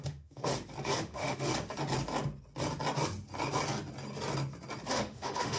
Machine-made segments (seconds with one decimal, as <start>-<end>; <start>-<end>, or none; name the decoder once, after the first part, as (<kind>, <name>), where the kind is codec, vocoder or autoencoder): 0.0-0.5 (autoencoder, DAC-VAE); 1.0-1.5; 4.9-5.6

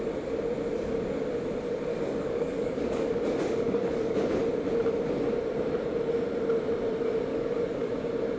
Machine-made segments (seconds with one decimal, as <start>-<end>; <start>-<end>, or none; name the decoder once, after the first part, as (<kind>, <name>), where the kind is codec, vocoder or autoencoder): 1.9-4.3 (codec, DAC); 7.3-7.9

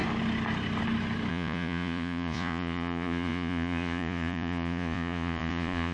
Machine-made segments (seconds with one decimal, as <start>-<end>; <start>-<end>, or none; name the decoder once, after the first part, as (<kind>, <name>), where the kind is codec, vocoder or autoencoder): 1.3-5.9 (vocoder, Vocos)

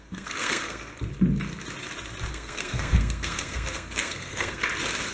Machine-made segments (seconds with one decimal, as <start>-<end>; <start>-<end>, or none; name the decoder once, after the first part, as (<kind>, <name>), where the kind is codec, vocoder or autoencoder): 0.0-0.9 (codec, SNAC); 2.3-4.6

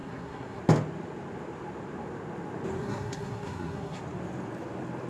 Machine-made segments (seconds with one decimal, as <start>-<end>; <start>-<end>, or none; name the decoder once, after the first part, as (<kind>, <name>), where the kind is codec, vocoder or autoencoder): 0.0-0.6 (codec, SNAC); 2.8-4.0

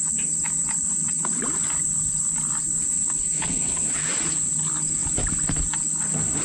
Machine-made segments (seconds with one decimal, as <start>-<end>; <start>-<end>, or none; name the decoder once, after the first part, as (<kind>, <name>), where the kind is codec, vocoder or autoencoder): 2.9-4.0 (codec, HILCodec)

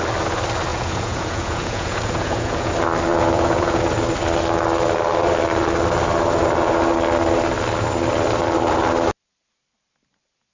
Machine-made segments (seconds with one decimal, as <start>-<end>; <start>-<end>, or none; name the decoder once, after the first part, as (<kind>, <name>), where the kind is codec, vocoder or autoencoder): 0.7-2.7 (vocoder, Vocos); 3.1-3.8